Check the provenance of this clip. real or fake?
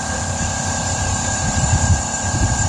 fake